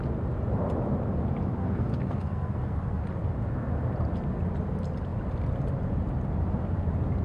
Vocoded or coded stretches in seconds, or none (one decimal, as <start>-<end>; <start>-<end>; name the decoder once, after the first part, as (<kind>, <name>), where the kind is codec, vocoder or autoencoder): 1.6-3.0 (codec, SNAC)